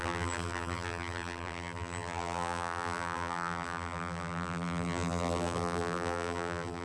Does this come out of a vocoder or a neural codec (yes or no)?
yes